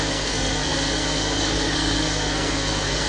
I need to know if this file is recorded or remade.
remade